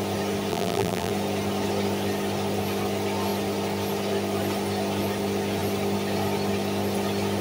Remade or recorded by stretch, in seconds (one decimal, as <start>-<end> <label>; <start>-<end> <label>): 0.0-0.5 recorded; 0.5-1.1 remade; 1.1-7.4 recorded